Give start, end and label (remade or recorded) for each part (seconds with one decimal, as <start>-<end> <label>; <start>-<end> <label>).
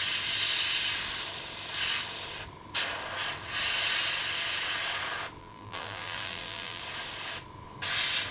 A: 0.0-5.4 recorded; 5.4-6.8 remade; 6.8-8.3 recorded